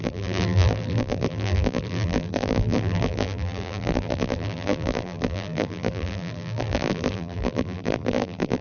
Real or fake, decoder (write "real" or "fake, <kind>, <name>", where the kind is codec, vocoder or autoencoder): fake, vocoder, BigVGAN v2